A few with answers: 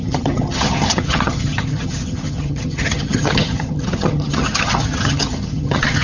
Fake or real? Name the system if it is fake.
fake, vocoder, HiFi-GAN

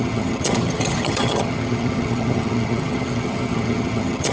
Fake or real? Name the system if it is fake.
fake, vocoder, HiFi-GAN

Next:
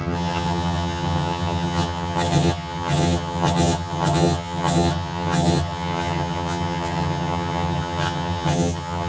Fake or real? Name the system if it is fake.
fake, vocoder, HiFi-GAN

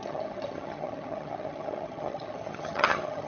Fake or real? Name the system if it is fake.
fake, vocoder, HiFi-GAN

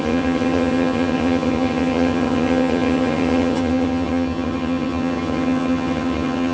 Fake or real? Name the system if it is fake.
fake, vocoder, HiFi-GAN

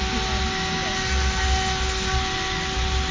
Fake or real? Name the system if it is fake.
real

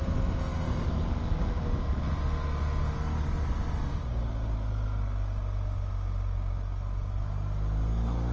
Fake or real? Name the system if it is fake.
real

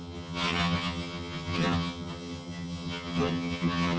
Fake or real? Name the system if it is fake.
fake, vocoder, HiFi-GAN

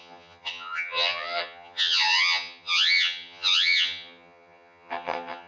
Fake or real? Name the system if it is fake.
fake, vocoder, HiFi-GAN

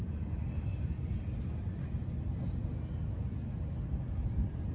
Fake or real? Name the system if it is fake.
real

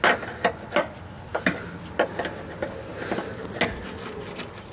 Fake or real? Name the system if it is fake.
real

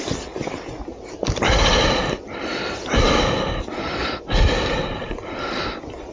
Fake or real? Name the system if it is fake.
real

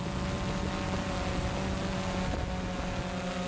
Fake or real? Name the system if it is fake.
real